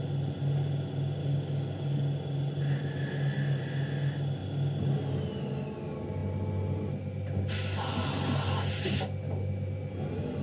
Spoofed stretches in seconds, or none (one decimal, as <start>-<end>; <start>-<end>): 1.2-2.0